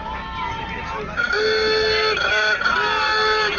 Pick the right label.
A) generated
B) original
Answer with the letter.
B